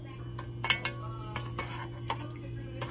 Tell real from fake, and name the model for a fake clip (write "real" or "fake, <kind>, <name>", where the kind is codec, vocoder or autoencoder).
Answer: real